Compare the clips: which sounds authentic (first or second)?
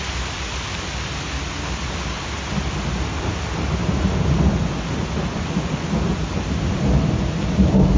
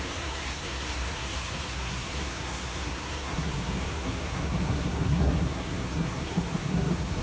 first